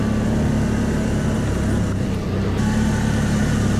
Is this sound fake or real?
real